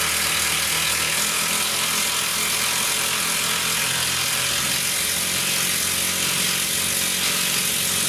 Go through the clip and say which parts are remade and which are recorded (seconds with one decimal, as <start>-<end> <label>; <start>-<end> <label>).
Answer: 0.0-8.1 recorded